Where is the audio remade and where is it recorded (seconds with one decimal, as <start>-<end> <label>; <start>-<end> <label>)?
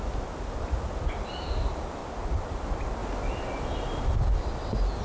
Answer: 0.0-2.0 recorded; 2.0-2.5 remade; 2.5-3.0 recorded; 3.0-4.3 remade; 4.3-5.0 recorded